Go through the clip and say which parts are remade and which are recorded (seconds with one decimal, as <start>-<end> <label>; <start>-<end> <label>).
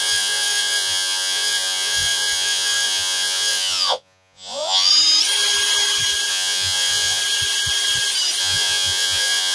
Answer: 0.0-4.9 remade; 4.9-6.3 recorded; 6.3-7.2 remade; 7.2-8.4 recorded; 8.4-9.5 remade